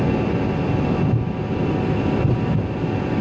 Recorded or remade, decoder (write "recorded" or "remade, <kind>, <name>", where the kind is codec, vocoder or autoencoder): recorded